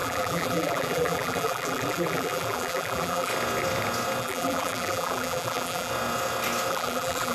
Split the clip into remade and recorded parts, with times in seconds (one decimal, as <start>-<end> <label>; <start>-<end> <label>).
0.0-3.3 remade; 3.3-4.2 recorded; 4.2-5.9 remade; 5.9-6.7 recorded; 6.7-7.3 remade